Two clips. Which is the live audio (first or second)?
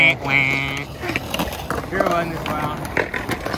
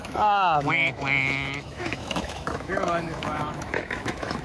first